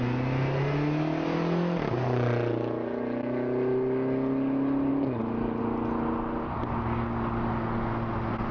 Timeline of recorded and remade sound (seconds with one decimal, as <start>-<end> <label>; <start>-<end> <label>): 0.0-8.5 recorded